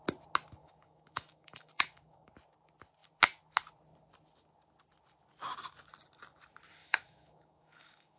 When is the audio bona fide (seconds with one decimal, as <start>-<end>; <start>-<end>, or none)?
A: 0.0-0.6; 2.3-6.8